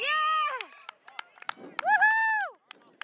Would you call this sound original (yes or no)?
yes